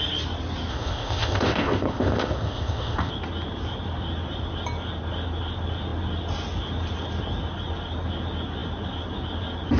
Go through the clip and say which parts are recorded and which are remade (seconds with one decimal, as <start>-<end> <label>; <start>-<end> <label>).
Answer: 0.0-0.7 recorded; 0.7-3.1 remade; 3.1-9.8 recorded